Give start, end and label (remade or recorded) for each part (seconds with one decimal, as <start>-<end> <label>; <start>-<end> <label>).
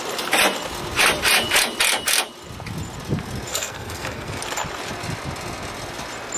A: 0.0-3.5 recorded; 3.5-4.4 remade; 4.4-6.4 recorded